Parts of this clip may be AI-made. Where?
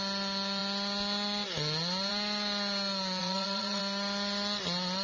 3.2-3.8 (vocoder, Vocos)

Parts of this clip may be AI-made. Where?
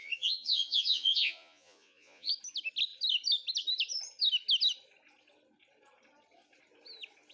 0.0-2.3 (vocoder, Vocos)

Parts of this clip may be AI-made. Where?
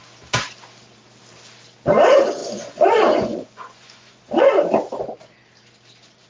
2.4-4.5 (vocoder, Vocos)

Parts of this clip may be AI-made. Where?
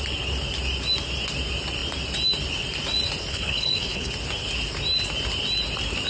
3.3-4.1 (codec, HILCodec)